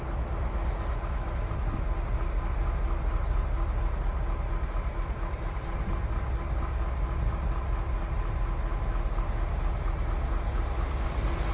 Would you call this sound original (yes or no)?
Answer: yes